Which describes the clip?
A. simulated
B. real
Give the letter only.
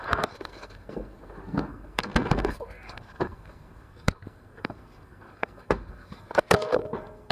A